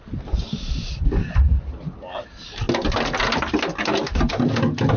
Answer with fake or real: real